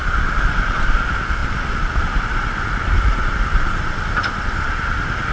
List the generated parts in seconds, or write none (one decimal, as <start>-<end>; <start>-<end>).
0.0-5.3